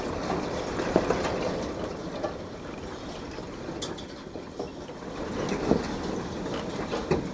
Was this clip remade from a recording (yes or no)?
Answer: no